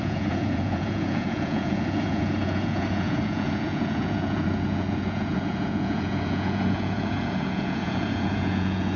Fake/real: fake